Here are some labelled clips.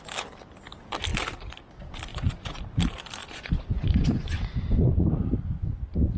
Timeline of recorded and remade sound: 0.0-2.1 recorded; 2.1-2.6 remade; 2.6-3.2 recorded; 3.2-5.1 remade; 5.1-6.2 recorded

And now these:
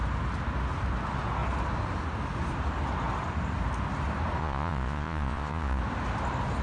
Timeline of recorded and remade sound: 0.0-4.4 recorded; 4.4-5.8 remade; 5.8-6.6 recorded

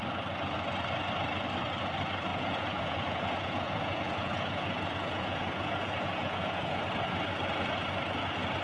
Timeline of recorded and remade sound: 0.0-2.3 recorded; 2.3-6.8 remade; 6.8-8.6 recorded

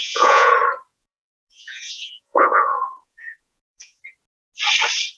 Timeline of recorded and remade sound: 0.0-0.5 remade; 0.5-0.9 recorded; 0.9-4.0 remade; 4.0-5.2 recorded